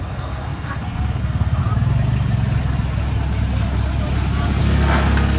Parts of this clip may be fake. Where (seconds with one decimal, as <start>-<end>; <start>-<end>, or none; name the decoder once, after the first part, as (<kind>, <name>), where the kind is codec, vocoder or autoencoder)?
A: 0.0-1.6 (codec, SNAC); 4.6-5.4

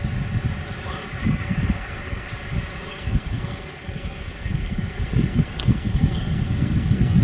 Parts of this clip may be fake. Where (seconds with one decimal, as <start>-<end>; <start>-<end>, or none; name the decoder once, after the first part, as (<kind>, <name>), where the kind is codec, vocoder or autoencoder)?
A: 1.2-2.3 (codec, SNAC); 2.9-7.2

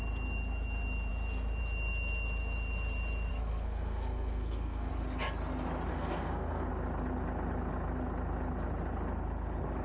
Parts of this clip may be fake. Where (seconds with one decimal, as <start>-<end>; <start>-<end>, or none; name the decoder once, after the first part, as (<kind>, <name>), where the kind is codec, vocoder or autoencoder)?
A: 3.3-4.9 (codec, SNAC); 5.9-6.7

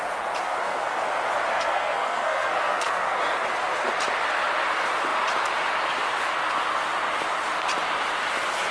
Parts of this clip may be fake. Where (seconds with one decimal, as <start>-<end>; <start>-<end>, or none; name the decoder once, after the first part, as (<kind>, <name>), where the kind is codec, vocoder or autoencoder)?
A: 0.4-1.0 (codec, SNAC); 1.5-3.2